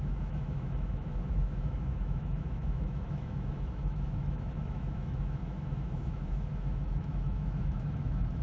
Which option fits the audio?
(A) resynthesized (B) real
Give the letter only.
A